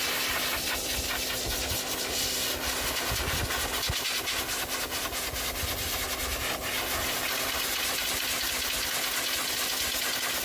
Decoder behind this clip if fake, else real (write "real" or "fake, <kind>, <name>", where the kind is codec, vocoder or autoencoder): real